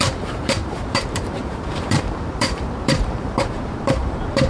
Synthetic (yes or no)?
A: yes